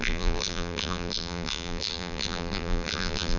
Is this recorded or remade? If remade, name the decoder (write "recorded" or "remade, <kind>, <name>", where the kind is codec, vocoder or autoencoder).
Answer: remade, vocoder, BigVGAN v2